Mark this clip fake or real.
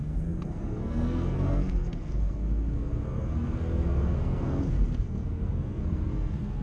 fake